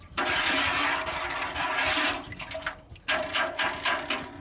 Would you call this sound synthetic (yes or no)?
no